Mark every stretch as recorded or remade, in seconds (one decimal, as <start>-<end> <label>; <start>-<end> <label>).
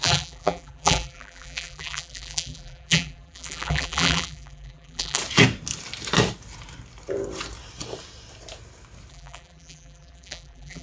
0.0-5.2 remade; 5.2-9.1 recorded; 9.1-10.8 remade